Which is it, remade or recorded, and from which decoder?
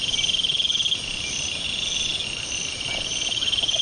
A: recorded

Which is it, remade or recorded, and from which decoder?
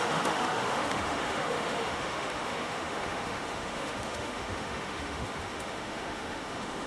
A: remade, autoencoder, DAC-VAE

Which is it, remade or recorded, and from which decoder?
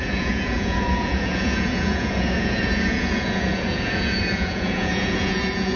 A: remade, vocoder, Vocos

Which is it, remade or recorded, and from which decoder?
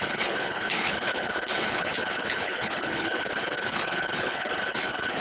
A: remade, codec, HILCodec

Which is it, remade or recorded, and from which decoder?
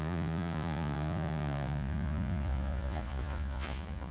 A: remade, vocoder, Vocos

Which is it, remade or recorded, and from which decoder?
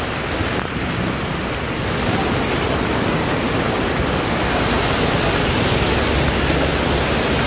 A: recorded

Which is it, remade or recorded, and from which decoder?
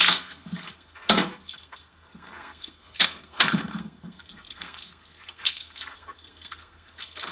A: remade, codec, SNAC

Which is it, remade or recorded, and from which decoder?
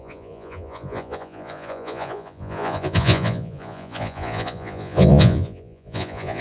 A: remade, vocoder, Vocos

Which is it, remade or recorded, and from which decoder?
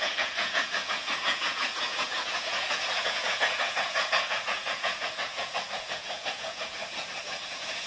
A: remade, vocoder, Vocos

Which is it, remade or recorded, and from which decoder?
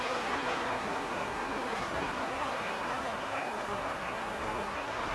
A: remade, codec, SNAC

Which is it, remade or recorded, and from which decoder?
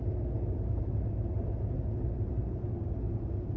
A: recorded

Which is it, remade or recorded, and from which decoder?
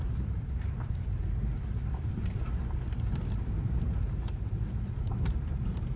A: remade, vocoder, BigVGAN v2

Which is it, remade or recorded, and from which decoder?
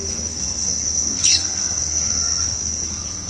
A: remade, codec, SNAC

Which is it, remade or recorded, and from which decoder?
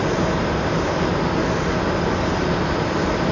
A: recorded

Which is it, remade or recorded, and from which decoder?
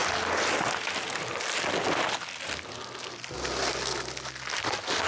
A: recorded